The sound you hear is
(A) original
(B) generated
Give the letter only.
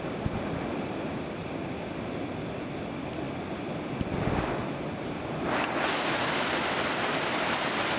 A